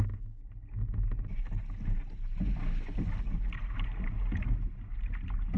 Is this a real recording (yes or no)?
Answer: yes